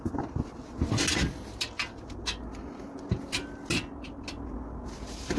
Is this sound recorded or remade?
recorded